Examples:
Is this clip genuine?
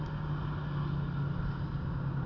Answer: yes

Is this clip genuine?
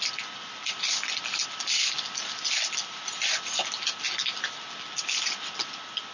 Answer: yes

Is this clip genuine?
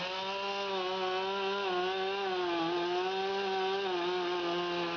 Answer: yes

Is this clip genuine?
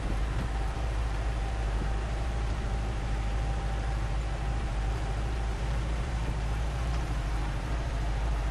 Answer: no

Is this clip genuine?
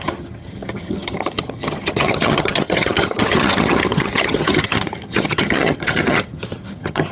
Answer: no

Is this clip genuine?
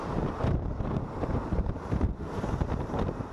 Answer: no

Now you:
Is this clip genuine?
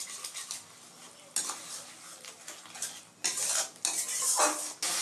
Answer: yes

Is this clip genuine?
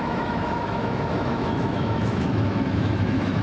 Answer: no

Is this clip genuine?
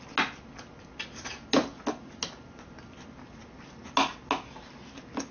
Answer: yes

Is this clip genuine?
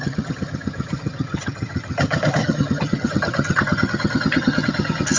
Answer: no